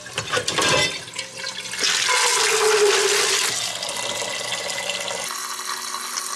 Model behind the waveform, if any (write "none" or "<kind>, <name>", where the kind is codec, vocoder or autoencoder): none